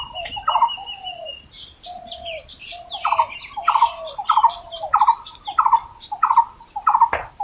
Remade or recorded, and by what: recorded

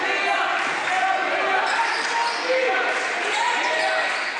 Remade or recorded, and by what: recorded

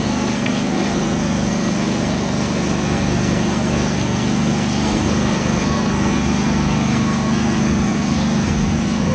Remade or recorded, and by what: remade, codec, SNAC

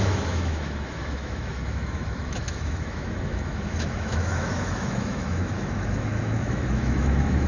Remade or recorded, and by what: remade, autoencoder, DAC-VAE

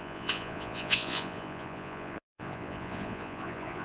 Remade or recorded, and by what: remade, vocoder, Vocos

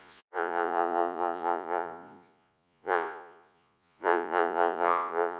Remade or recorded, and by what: remade, vocoder, Vocos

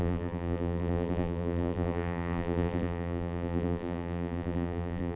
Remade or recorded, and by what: remade, vocoder, BigVGAN v2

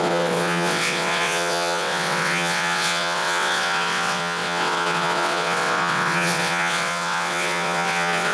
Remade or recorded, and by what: remade, vocoder, WaveNeXt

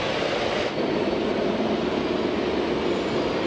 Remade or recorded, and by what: recorded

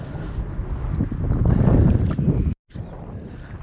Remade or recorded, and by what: recorded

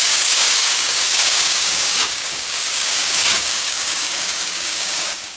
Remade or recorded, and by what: remade, codec, DAC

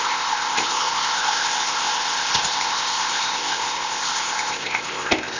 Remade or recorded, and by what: remade, codec, ZipCodec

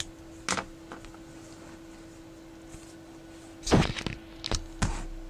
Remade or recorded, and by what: recorded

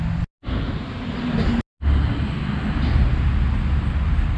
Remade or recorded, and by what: recorded